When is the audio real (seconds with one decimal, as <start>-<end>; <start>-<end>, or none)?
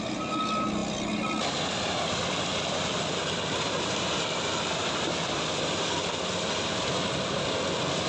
0.0-8.1